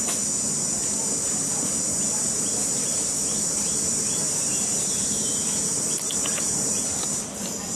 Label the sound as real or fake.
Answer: real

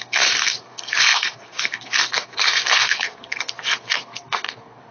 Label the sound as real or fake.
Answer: fake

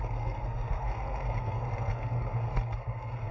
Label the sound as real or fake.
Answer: fake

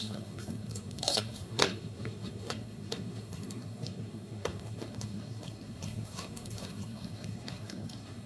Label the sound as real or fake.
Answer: fake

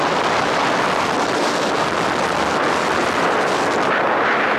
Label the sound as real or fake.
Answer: real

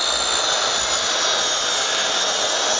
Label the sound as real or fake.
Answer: real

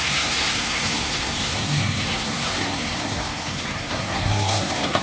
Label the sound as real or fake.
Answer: fake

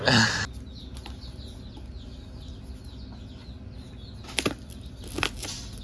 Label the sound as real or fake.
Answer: real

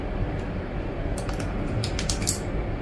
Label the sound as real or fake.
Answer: real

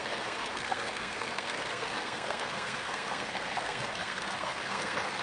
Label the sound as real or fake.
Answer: fake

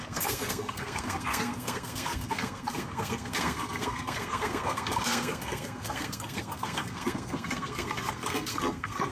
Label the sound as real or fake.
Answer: fake